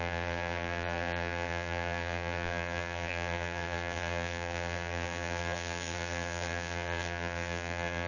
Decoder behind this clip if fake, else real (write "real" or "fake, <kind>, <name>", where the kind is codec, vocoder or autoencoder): fake, vocoder, BigVGAN v2